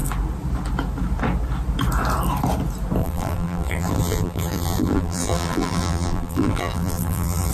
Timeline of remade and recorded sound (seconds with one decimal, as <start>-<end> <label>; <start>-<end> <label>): 0.0-3.0 recorded; 3.0-7.5 remade